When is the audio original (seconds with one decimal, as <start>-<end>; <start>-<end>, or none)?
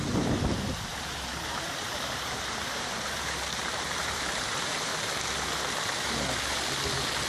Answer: 4.9-7.3